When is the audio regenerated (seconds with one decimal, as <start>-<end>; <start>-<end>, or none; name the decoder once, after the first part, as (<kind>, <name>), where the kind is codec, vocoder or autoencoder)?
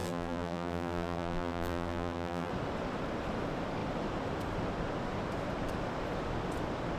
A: 0.0-2.5 (vocoder, BigVGAN v2)